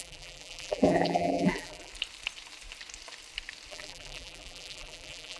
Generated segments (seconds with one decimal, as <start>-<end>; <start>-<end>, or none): 0.0-1.9; 3.7-5.4